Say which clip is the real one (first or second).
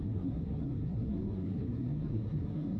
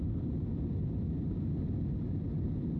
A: second